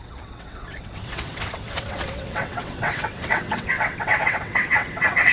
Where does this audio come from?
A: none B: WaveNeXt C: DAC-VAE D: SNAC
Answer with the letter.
B